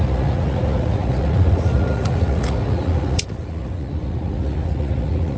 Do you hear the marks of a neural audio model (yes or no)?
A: yes